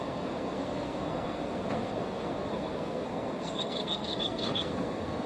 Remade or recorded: remade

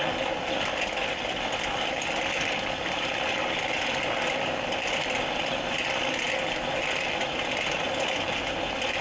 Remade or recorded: recorded